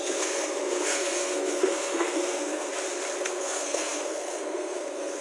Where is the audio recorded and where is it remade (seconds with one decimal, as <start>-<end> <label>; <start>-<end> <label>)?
0.0-2.7 remade; 2.7-3.2 recorded; 3.2-5.2 remade